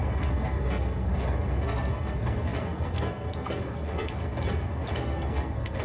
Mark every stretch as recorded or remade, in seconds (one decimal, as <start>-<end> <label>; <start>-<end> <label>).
0.0-5.8 remade